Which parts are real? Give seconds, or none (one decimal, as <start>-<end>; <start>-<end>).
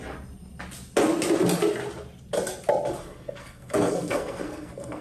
0.0-3.0